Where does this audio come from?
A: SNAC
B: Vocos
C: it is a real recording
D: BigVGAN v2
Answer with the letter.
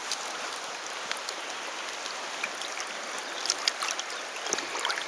C